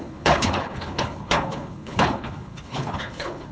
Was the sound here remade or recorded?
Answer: remade